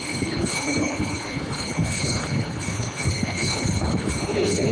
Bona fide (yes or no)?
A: no